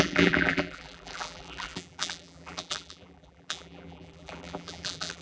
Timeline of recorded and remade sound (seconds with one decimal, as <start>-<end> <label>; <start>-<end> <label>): 0.0-5.2 remade